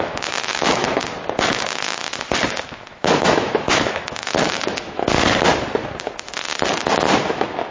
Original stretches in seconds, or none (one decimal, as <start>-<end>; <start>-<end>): 1.0-1.5; 2.0-2.6; 5.0-7.3